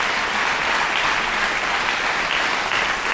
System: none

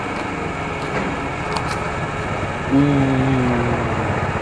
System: none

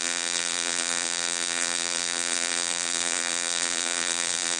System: vocoder, BigVGAN v2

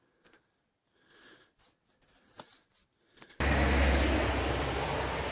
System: none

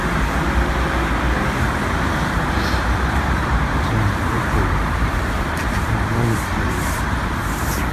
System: vocoder, BigVGAN v2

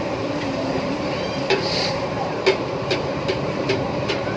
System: vocoder, BigVGAN v2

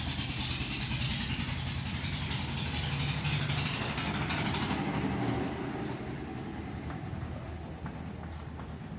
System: none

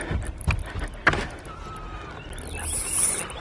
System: none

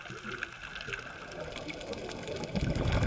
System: none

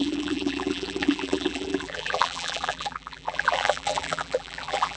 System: vocoder, BigVGAN v2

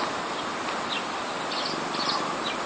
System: none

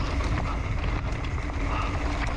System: none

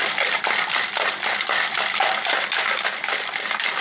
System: none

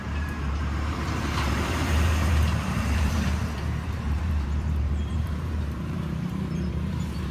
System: vocoder, BigVGAN v2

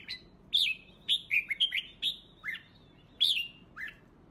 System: none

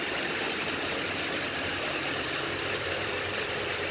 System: vocoder, BigVGAN v2